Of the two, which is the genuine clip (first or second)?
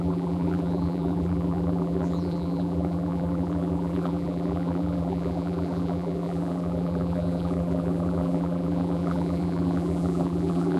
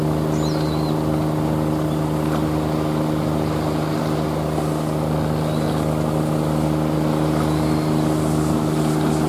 second